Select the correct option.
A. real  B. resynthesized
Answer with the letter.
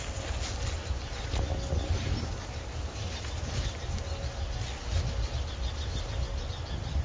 A